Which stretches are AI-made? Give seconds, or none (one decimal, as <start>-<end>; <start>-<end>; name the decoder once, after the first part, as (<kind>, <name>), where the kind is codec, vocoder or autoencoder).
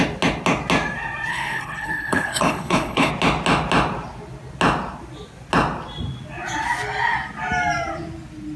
1.3-3.1 (codec, HILCodec)